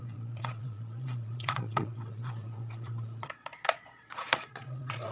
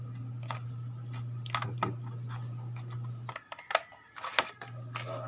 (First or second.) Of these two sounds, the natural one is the second